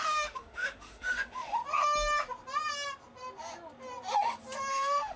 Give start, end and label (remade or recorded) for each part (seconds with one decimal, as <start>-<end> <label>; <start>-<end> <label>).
0.0-1.6 remade; 1.6-4.7 recorded; 4.7-5.2 remade